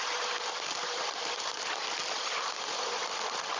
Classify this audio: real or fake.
real